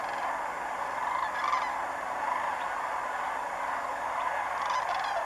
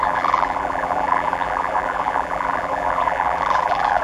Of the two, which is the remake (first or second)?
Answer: second